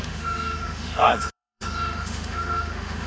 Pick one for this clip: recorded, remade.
remade